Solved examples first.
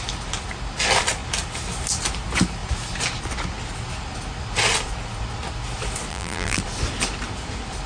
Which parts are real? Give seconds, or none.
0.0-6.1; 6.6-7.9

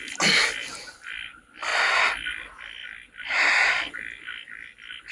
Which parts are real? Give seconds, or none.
0.0-5.1

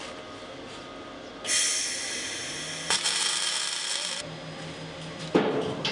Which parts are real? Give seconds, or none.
0.0-5.9

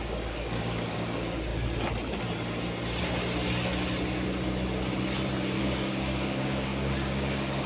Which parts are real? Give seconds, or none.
1.5-5.6

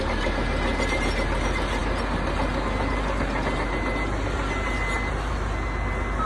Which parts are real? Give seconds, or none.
0.0-6.3

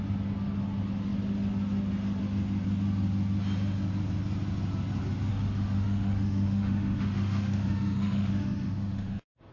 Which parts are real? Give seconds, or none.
0.0-5.3

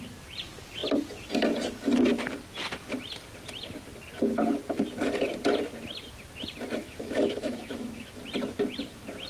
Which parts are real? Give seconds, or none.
0.0-6.8; 8.1-9.3